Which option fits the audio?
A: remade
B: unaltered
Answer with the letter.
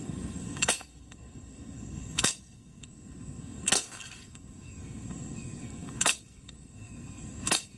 A